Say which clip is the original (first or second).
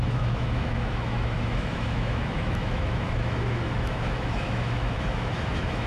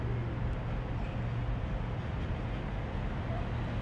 second